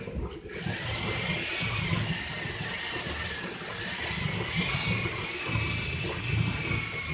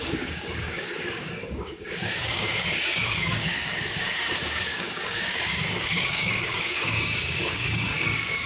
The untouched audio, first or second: first